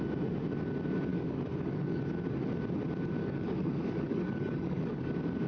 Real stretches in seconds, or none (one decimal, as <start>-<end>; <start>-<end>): 0.0-1.1; 2.0-3.2; 5.1-5.5